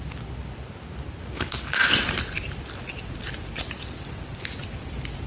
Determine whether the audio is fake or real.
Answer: real